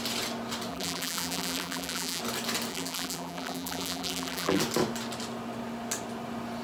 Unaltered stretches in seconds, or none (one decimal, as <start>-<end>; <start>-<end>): 0.0-0.7; 2.2-2.7; 4.6-6.6